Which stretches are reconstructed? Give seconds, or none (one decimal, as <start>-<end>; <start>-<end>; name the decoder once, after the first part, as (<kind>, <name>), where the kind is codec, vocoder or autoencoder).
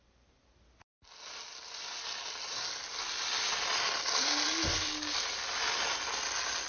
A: 3.5-4.9 (vocoder, BigVGAN v2)